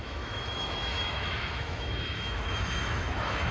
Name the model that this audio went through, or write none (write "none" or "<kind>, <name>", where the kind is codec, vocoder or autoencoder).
autoencoder, DAC-VAE